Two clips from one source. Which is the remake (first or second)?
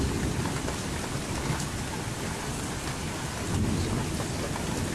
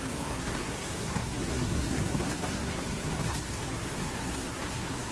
second